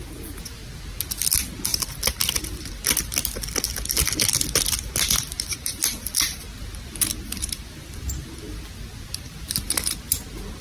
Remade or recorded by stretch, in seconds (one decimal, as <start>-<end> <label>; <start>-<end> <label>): 0.0-7.1 recorded; 7.1-10.6 remade